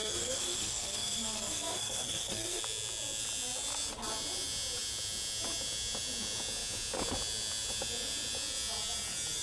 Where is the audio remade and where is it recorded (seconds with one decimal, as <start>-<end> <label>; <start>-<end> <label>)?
0.0-2.6 remade; 2.6-9.4 recorded